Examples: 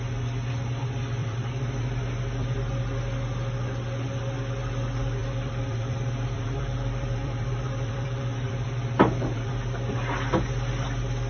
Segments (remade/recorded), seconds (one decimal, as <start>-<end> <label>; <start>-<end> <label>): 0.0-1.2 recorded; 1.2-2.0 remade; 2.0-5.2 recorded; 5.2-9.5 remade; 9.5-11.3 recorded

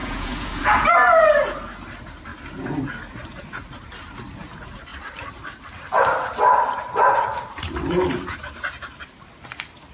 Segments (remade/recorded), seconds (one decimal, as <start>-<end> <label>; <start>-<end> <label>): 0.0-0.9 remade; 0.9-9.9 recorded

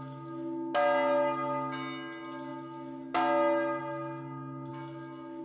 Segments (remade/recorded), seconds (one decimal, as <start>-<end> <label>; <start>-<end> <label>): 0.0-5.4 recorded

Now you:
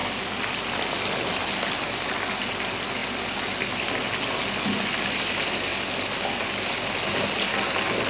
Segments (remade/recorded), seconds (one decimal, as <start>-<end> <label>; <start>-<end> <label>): 0.0-8.1 recorded

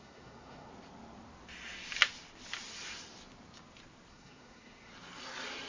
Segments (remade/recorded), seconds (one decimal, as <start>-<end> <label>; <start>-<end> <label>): 0.0-0.7 remade; 0.7-4.1 recorded; 4.1-4.9 remade; 4.9-5.7 recorded

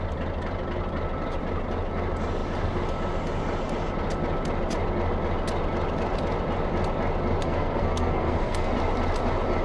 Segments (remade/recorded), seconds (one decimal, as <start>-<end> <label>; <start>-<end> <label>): 0.0-7.4 recorded; 7.4-8.7 remade; 8.7-9.6 recorded

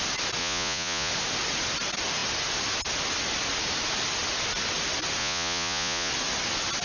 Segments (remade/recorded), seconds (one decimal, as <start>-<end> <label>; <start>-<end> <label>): 0.0-0.4 recorded; 0.4-1.1 remade; 1.1-5.2 recorded; 5.2-6.1 remade; 6.1-6.8 recorded

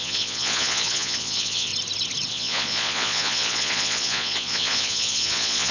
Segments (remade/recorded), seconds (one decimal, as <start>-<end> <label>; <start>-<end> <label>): 0.0-1.7 remade; 1.7-2.3 recorded; 2.3-5.7 remade